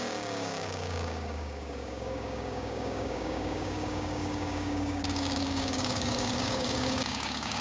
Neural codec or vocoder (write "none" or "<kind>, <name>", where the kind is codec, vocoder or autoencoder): codec, DAC